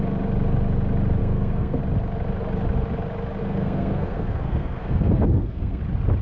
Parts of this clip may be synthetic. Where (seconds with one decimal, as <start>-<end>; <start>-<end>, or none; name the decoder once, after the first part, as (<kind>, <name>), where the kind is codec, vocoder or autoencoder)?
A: 1.2-1.8 (codec, SNAC); 3.4-5.8